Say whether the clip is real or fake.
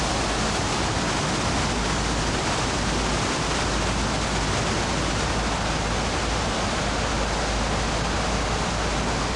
real